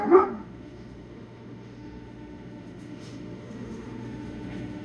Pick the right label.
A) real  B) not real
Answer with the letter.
B